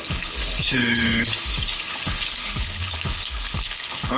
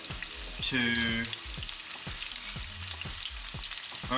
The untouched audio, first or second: second